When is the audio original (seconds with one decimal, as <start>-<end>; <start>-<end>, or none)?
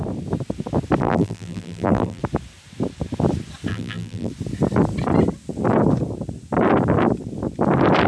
0.0-1.0; 2.2-3.7; 4.3-8.1